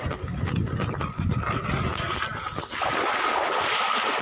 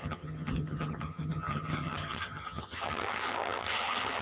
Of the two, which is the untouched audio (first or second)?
first